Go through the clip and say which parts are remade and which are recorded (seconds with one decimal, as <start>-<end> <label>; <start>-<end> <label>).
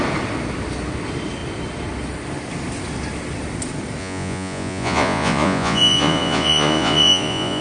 0.0-4.0 recorded; 4.0-7.6 remade